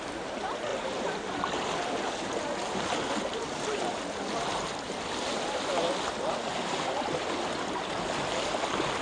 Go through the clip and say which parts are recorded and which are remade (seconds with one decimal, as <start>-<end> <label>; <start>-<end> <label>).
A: 0.0-9.0 recorded